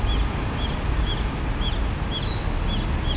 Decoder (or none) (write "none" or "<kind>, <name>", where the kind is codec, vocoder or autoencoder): none